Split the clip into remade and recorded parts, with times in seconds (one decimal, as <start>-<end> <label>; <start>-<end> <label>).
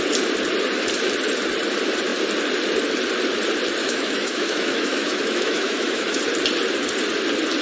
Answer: 0.0-3.8 recorded; 3.8-6.2 remade; 6.2-7.6 recorded